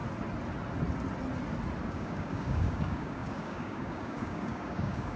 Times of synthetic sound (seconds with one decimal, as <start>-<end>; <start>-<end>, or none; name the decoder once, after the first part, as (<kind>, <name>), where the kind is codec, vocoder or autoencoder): 1.8-5.2 (codec, DAC)